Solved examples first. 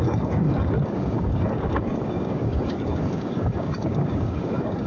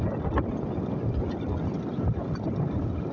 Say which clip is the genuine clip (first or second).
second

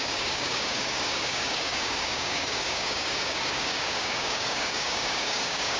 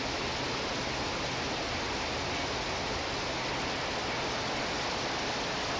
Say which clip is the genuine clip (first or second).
second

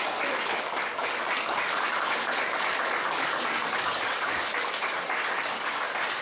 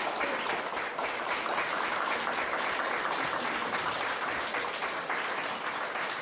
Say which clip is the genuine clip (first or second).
second